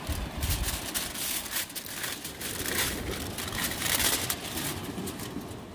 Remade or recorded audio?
recorded